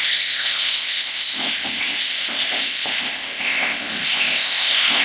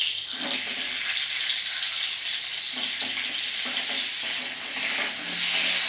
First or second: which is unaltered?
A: second